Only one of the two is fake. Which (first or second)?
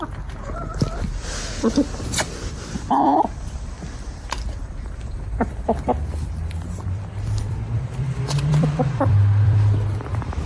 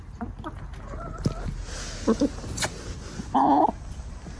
first